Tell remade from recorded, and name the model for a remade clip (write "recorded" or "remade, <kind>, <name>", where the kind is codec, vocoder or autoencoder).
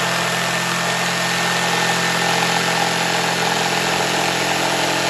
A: recorded